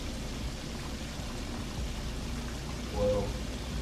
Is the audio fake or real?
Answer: real